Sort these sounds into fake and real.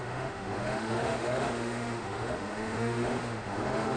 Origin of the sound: fake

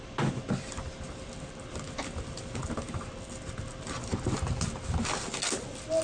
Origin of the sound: real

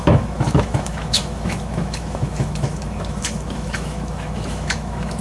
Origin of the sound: fake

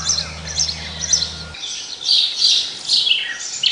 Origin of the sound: real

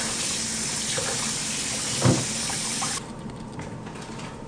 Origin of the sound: real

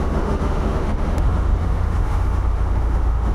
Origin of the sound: fake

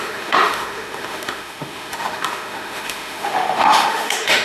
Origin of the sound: fake